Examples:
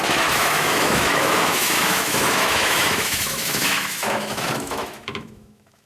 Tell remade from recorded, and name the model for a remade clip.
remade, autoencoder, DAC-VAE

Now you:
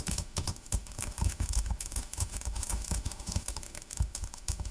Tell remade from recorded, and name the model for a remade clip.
remade, autoencoder, DAC-VAE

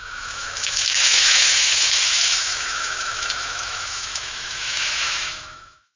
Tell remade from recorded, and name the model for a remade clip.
remade, autoencoder, DAC-VAE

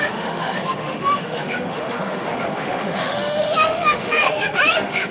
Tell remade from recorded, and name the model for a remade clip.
remade, autoencoder, DAC-VAE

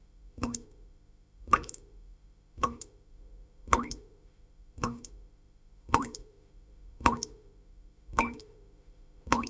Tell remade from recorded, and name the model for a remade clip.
remade, autoencoder, DAC-VAE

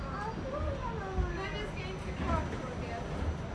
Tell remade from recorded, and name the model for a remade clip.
recorded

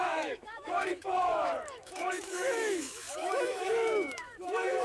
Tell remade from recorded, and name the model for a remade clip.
remade, autoencoder, DAC-VAE